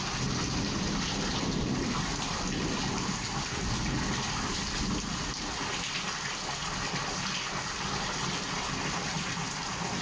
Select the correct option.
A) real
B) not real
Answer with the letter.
A